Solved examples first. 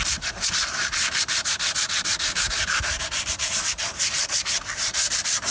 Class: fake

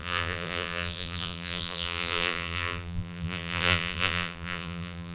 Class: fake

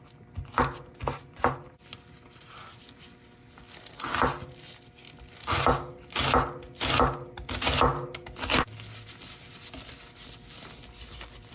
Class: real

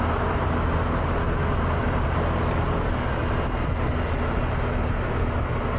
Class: real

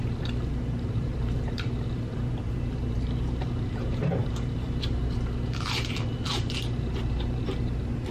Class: fake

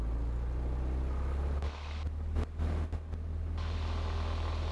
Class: real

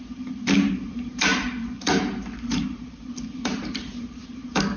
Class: fake